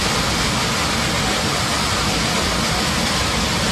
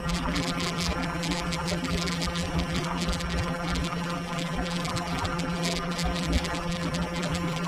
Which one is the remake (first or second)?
second